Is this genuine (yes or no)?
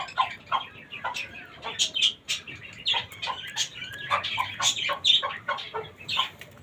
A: yes